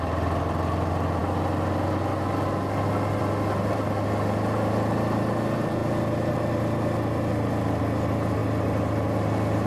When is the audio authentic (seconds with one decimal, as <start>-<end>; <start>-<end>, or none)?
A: 0.0-9.7